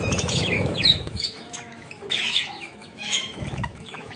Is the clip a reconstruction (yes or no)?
yes